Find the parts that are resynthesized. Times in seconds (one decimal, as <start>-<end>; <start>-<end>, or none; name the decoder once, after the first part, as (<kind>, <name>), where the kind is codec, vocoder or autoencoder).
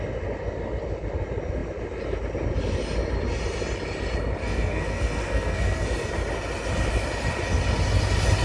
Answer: 4.4-6.1 (codec, SNAC)